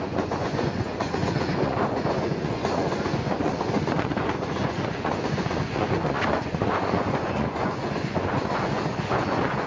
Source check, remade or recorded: remade